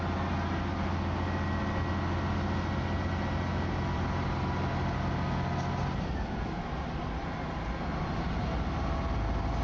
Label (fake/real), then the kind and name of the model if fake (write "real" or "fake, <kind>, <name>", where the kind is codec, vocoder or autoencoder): real